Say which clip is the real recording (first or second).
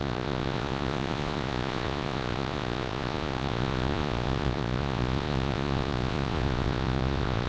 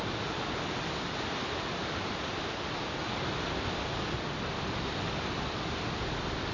second